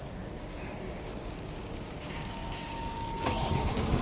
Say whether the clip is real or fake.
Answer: fake